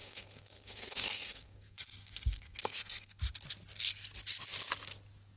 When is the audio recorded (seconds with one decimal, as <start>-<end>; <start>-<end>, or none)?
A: 3.2-5.4